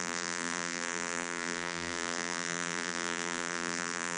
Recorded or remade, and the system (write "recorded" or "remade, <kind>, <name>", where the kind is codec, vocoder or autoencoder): remade, vocoder, BigVGAN v2